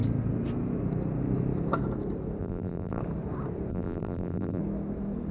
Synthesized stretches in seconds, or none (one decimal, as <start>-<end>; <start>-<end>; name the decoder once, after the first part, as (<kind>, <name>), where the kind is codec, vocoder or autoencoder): 2.4-3.0 (vocoder, BigVGAN v2); 3.7-4.6